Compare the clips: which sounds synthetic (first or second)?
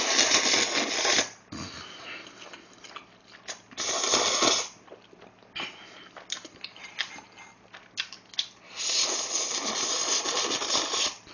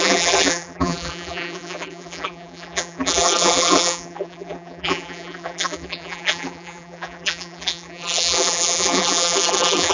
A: second